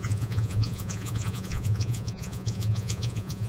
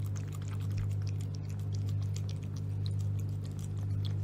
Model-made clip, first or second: first